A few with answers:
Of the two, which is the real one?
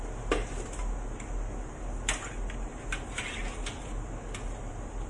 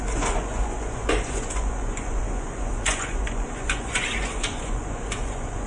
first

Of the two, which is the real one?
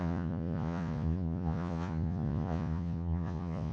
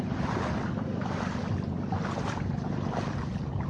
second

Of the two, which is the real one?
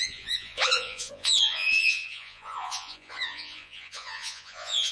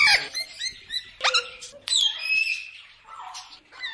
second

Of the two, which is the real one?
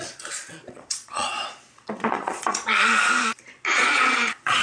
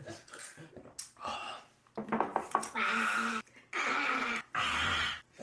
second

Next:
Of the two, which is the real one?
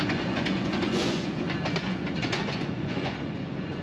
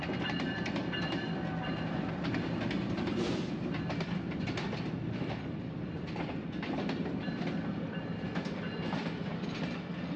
second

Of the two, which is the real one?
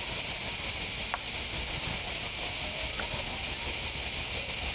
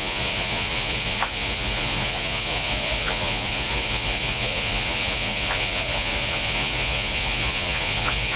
first